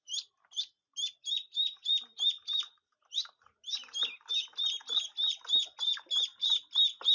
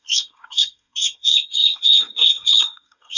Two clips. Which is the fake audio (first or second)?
second